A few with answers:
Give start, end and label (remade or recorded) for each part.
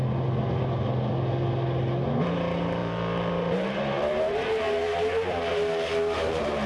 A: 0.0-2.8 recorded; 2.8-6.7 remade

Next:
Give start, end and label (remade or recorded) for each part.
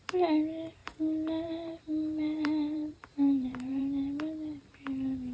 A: 0.0-0.8 recorded; 0.8-3.8 remade; 3.8-5.3 recorded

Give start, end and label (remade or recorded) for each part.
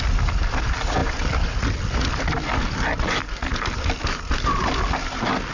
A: 0.0-1.0 recorded; 1.0-2.7 remade; 2.7-5.5 recorded